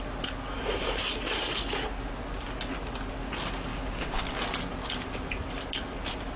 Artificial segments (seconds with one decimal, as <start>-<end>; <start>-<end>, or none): 3.7-4.2

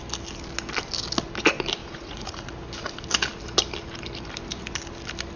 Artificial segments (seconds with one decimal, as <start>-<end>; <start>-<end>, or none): 1.8-2.5

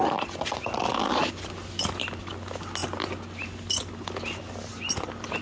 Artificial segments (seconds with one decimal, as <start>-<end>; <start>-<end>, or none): none

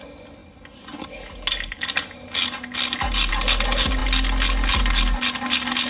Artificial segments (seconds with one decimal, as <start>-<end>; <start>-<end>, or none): none

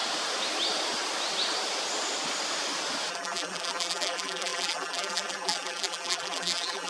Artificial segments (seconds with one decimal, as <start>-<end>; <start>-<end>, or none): 3.1-6.9

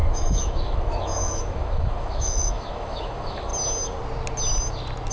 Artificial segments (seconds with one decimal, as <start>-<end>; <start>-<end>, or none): 0.0-3.5

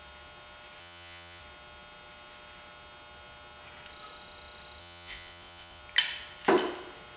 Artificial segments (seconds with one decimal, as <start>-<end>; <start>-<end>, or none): 0.8-1.4; 4.8-5.8

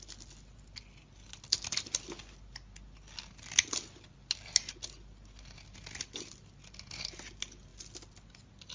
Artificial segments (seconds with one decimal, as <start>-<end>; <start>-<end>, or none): none